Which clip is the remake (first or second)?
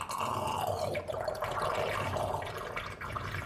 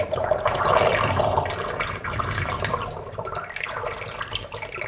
second